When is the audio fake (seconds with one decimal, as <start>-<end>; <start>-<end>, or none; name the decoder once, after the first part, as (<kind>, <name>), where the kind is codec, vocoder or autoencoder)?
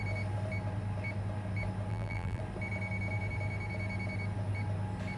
1.9-2.4 (vocoder, BigVGAN v2)